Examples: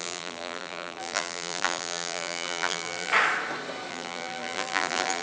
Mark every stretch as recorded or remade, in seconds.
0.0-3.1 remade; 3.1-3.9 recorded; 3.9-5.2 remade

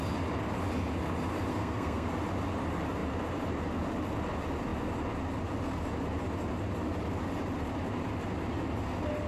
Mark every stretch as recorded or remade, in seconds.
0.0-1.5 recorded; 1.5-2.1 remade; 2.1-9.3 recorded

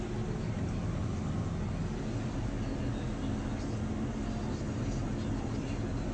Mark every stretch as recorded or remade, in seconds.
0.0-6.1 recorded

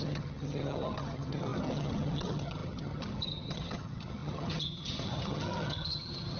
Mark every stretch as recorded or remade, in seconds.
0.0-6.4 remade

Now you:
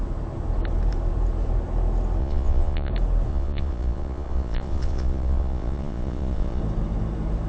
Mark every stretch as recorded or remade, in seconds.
0.0-2.2 recorded; 2.2-2.9 remade; 2.9-3.3 recorded; 3.3-6.6 remade; 6.6-7.5 recorded